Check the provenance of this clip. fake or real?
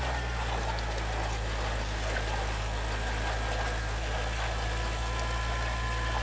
real